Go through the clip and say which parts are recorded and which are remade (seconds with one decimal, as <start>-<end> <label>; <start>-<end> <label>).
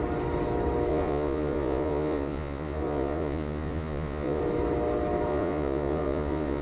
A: 0.0-0.9 recorded; 0.9-4.4 remade; 4.4-5.3 recorded; 5.3-6.6 remade